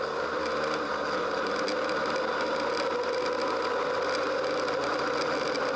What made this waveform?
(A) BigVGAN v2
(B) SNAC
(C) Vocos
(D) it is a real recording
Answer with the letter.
D